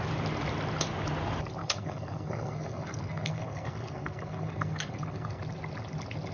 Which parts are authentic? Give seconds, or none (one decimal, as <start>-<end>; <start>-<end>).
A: 0.0-1.6; 5.4-6.3